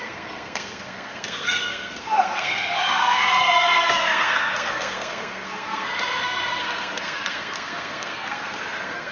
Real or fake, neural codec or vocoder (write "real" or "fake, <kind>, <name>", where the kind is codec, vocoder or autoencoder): fake, codec, SNAC